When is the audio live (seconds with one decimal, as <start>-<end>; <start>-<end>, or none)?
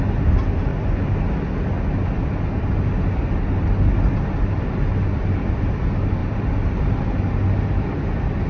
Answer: 0.0-8.5